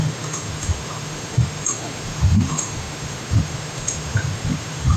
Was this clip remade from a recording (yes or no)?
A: yes